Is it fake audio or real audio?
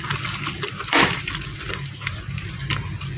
fake